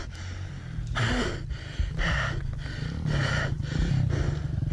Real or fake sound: real